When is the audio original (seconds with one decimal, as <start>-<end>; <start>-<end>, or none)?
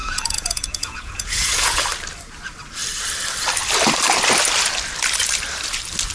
1.8-6.1